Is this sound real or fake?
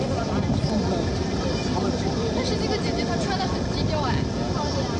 real